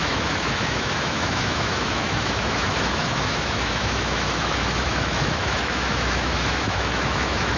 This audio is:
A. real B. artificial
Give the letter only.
B